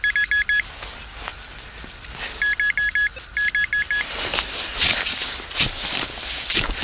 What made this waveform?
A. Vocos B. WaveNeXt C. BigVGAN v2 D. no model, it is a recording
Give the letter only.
D